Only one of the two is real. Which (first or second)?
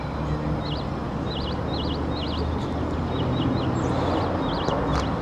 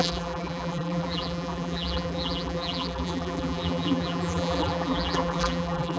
first